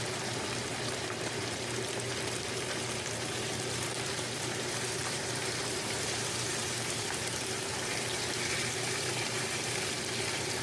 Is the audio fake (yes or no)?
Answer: yes